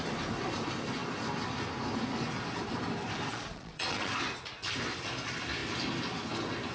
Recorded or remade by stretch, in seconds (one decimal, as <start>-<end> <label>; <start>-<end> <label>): 0.0-3.3 recorded; 3.3-4.1 remade; 4.1-6.7 recorded